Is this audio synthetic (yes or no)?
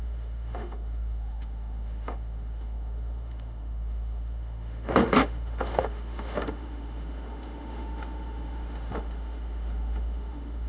yes